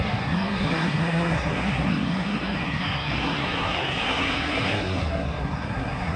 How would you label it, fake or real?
fake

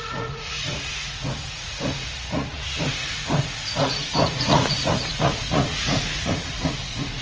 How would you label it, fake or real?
fake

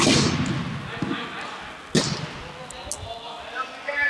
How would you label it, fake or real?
real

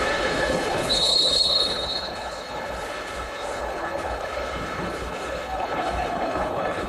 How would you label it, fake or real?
fake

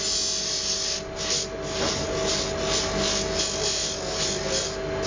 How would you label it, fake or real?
real